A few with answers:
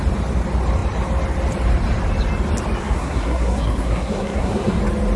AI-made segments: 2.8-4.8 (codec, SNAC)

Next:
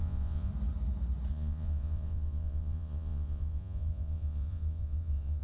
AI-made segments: 0.0-0.5 (vocoder, Vocos); 1.3-5.4

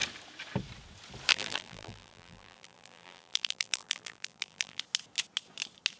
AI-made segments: 1.3-4.8 (vocoder, BigVGAN v2)